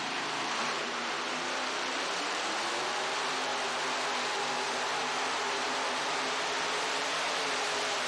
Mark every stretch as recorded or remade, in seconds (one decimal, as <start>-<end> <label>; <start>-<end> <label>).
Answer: 0.0-3.5 remade; 3.5-4.4 recorded; 4.4-8.1 remade